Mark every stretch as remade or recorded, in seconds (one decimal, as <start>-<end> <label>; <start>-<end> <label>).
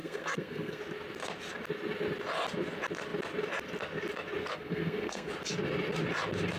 0.0-0.8 remade; 0.8-4.4 recorded; 4.4-5.3 remade; 5.3-6.6 recorded